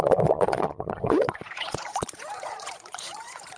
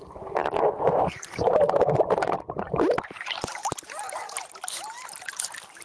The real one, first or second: second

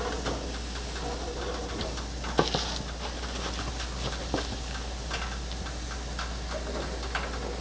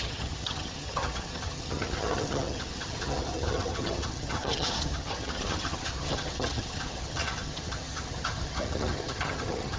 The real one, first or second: first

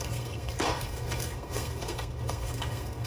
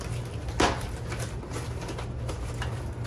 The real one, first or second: second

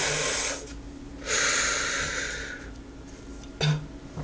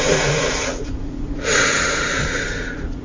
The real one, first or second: first